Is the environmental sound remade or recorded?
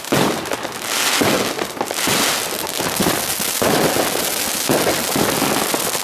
recorded